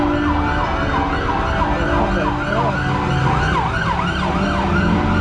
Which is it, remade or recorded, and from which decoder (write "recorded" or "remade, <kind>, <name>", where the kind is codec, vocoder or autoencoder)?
recorded